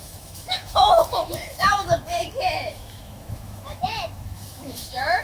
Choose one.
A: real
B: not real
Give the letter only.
B